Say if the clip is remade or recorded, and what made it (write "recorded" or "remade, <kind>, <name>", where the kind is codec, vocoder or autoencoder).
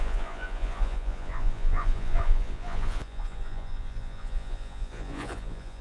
remade, vocoder, Vocos